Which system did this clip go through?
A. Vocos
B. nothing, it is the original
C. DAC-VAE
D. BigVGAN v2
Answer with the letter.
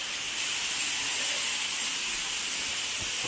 B